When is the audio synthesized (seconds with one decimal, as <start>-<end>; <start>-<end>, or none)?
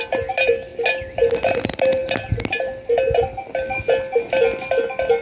none